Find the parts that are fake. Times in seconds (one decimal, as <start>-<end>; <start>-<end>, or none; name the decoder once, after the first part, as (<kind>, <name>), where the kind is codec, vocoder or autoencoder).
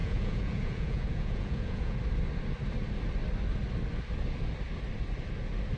0.0-2.0 (vocoder, Vocos)